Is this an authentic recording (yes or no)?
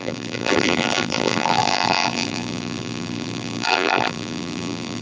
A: no